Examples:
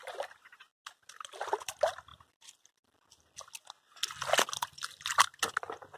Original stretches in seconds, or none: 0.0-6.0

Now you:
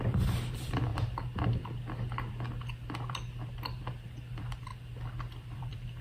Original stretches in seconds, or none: 0.9-3.8; 4.7-5.4